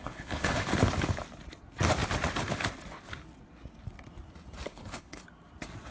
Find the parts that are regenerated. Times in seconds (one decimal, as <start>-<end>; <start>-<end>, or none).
0.0-0.7; 4.7-5.2